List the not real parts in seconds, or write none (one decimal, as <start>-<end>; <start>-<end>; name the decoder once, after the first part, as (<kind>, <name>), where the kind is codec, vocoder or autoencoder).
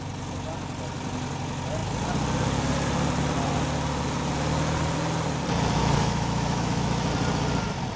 5.8-7.1 (autoencoder, DAC-VAE)